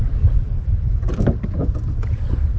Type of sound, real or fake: real